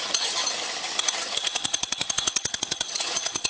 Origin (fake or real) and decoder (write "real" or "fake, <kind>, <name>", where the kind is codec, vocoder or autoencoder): fake, vocoder, HiFi-GAN